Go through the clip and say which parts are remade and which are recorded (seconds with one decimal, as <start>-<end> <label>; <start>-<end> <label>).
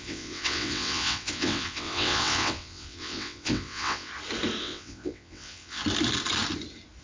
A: 0.0-4.1 remade; 4.1-4.6 recorded; 4.6-5.8 remade; 5.8-7.0 recorded